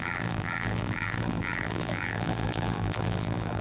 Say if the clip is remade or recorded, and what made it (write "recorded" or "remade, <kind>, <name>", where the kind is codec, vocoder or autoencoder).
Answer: remade, vocoder, BigVGAN v2